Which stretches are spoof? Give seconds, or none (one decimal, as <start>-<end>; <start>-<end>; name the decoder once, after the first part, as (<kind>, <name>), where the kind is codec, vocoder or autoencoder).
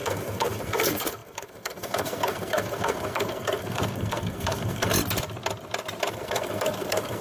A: 0.0-4.9 (codec, SNAC); 6.1-7.2